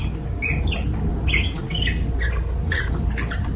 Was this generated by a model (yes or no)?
no